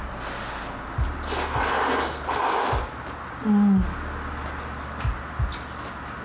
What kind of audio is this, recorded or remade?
recorded